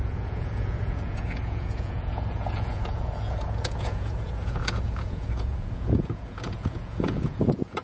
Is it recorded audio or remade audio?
remade